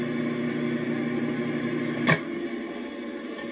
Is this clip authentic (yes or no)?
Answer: yes